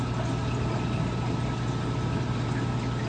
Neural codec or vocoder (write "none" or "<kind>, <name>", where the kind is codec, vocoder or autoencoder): none